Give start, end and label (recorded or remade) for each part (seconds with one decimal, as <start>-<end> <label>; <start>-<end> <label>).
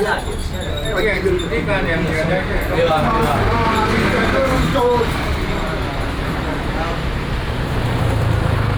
0.0-0.4 remade; 0.4-2.3 recorded; 2.3-8.8 remade